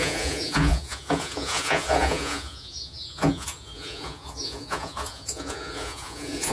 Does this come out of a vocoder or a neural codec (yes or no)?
yes